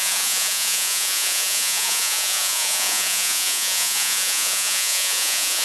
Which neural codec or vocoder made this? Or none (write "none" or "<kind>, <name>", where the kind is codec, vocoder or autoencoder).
vocoder, Vocos